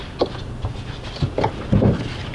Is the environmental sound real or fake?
real